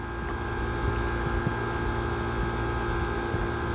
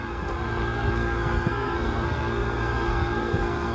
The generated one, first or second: second